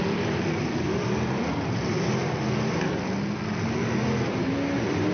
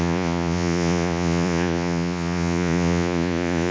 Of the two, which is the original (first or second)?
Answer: first